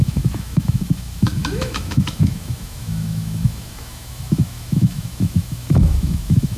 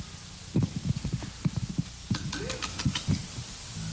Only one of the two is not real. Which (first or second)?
first